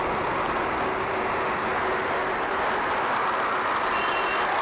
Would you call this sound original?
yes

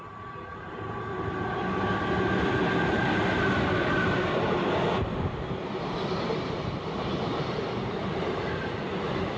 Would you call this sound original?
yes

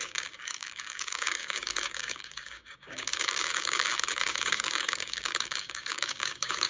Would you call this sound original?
no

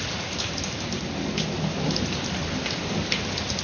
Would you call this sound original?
yes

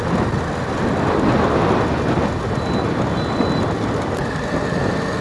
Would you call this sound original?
yes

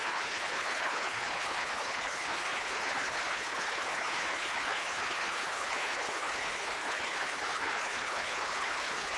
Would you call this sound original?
no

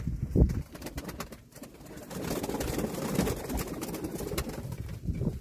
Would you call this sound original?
yes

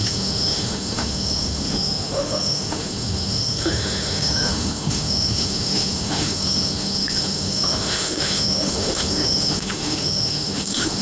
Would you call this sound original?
no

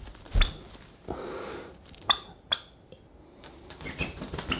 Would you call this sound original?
yes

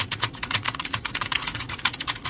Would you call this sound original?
no